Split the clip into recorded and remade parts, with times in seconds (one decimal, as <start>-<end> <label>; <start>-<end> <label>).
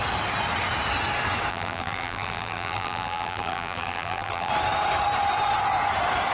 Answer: 0.0-1.5 recorded; 1.5-4.5 remade; 4.5-6.3 recorded